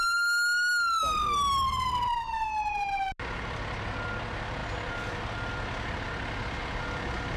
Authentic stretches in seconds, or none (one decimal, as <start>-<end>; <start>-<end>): 0.0-7.4

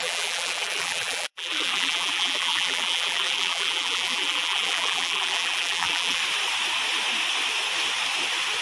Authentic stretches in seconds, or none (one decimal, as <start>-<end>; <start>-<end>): 6.2-8.6

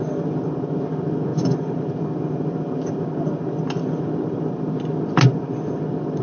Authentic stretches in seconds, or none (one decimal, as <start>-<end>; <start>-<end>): 0.0-6.2

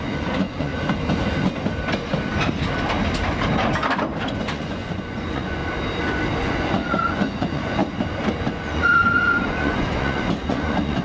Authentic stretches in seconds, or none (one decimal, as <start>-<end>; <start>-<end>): 0.7-4.3; 5.6-6.4; 7.8-8.4